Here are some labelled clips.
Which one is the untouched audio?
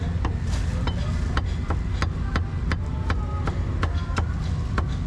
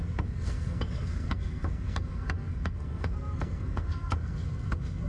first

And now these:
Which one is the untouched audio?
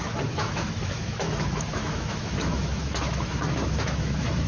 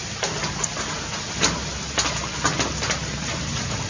second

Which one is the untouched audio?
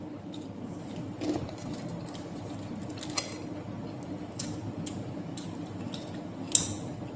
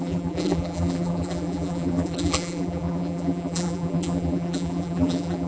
first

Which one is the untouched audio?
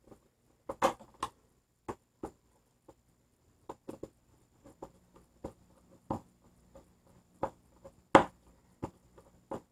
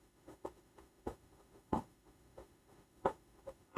first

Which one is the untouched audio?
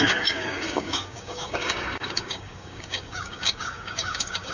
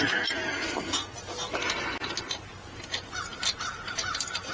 second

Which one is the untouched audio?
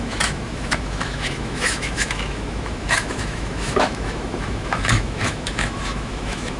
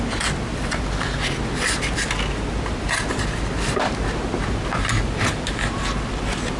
second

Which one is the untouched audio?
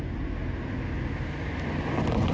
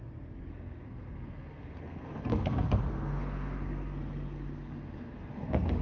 first